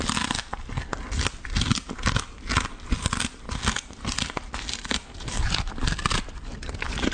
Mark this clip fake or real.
real